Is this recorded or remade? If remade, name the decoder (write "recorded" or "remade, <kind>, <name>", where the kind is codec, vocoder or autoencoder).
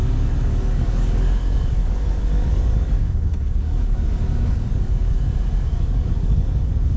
remade, codec, DAC